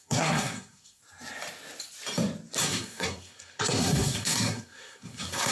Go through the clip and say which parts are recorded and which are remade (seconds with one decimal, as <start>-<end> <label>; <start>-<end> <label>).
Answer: 0.0-1.0 remade; 1.0-2.6 recorded; 2.6-5.5 remade